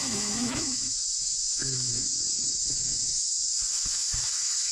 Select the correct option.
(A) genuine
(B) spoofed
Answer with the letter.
B